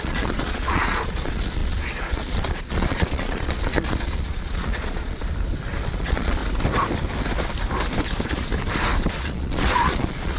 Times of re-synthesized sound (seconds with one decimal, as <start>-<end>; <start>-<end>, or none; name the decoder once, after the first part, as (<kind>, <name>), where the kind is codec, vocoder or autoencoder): 0.0-5.2 (vocoder, Vocos); 5.9-6.4; 9.1-10.4